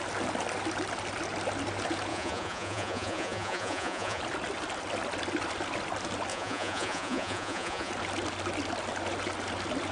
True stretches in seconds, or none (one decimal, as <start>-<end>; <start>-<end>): 0.0-2.1; 4.2-6.3; 7.9-9.9